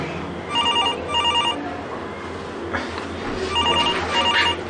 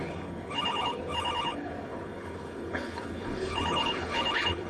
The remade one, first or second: second